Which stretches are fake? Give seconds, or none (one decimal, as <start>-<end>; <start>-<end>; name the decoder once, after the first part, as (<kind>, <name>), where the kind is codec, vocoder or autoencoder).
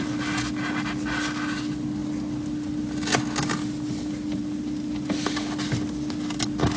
none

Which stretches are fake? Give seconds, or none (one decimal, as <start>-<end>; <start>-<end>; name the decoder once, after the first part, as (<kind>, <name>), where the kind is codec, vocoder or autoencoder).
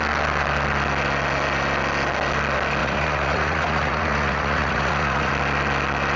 2.8-5.3 (vocoder, Vocos)